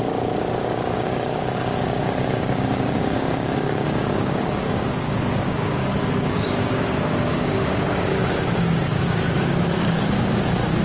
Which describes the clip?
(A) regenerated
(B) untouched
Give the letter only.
A